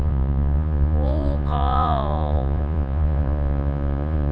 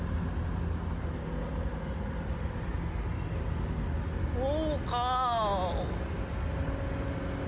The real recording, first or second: second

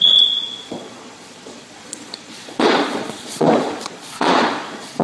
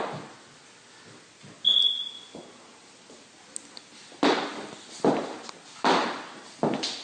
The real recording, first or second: second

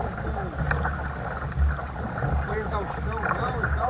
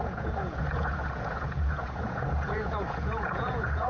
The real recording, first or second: first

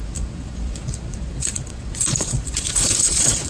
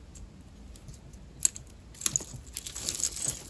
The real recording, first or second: second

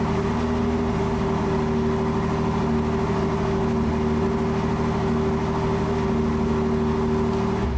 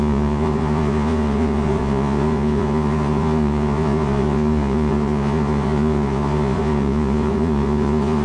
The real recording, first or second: first